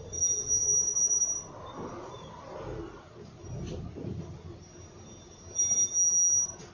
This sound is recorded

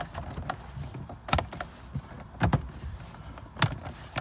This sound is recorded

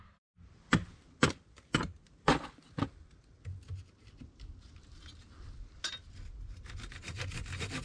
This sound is recorded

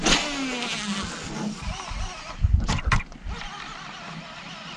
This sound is recorded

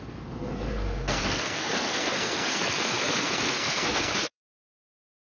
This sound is remade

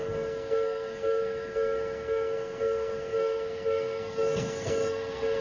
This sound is remade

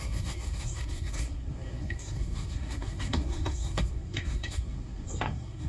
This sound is remade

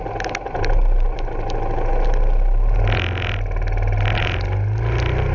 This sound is recorded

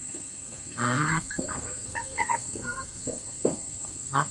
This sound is remade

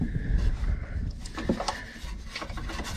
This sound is recorded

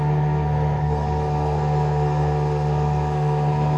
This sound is remade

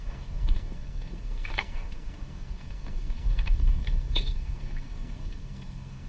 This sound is remade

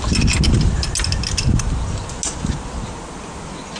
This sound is recorded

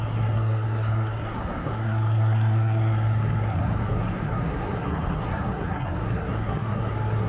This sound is remade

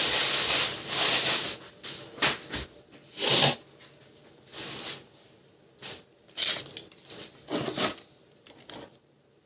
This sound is recorded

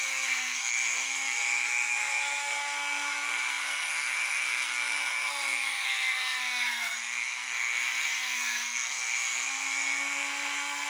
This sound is remade